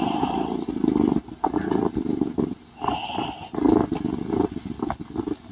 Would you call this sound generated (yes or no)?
no